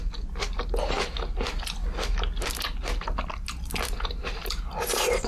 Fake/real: real